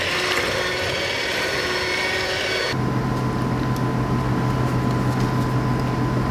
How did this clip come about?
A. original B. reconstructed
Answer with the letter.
A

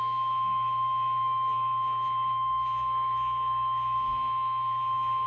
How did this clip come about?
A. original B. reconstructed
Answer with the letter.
B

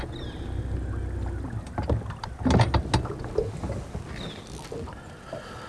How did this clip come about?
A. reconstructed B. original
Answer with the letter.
B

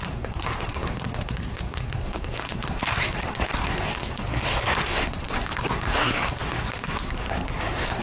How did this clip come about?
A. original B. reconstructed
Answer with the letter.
B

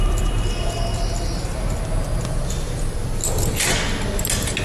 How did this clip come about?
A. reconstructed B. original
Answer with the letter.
B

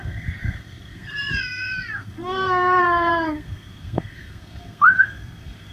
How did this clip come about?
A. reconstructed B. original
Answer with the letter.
A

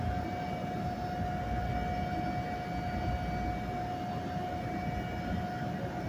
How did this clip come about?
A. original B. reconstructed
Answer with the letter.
A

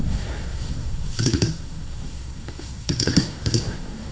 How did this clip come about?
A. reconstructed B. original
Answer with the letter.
A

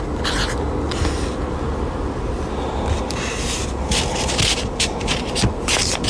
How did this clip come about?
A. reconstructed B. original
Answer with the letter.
B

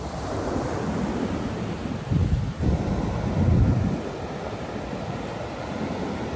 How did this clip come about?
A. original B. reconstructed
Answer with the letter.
A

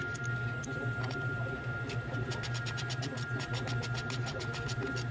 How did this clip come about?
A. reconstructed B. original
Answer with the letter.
B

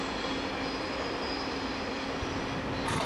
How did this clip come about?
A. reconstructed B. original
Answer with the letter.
B